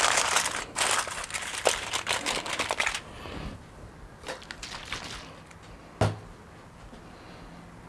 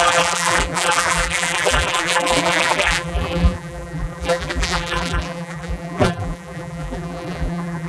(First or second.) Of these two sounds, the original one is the first